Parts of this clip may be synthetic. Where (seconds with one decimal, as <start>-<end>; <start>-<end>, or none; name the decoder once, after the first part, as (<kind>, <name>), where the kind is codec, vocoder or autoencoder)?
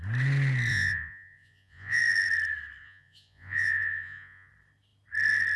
0.7-2.0 (vocoder, Vocos); 2.8-4.5